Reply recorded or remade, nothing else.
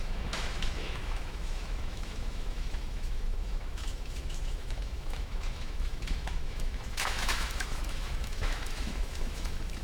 remade